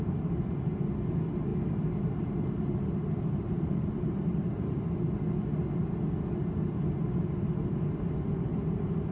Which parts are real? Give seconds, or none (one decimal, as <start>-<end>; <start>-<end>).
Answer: 0.0-1.5; 4.9-8.5